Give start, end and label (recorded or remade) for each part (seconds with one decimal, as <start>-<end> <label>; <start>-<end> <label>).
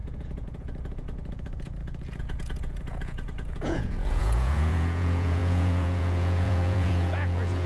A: 0.0-7.7 remade